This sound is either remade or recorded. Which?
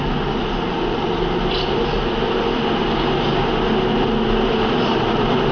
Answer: recorded